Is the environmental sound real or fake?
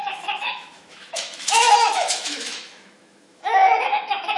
fake